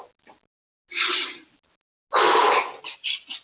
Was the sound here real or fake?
real